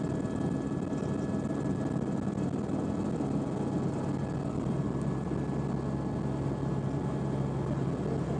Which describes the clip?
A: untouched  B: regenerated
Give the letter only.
A